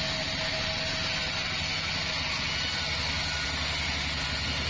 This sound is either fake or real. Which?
real